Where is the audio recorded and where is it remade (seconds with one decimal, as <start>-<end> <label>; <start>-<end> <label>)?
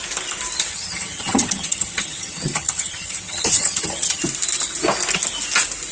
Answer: 0.0-0.7 recorded; 0.7-4.2 remade; 4.2-5.9 recorded